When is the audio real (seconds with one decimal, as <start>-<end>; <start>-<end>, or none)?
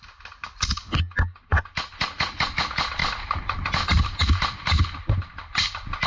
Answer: 0.0-6.1